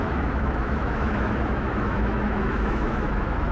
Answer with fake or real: fake